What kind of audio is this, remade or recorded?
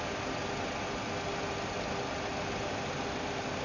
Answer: recorded